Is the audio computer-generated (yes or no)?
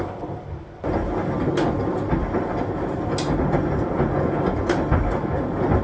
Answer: no